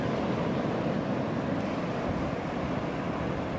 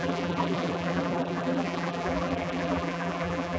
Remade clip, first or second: second